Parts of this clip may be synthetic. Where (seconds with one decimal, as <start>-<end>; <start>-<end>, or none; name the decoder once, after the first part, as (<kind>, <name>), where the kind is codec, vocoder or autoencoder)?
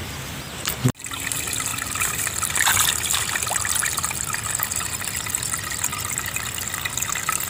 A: 0.0-0.9 (vocoder, BigVGAN v2)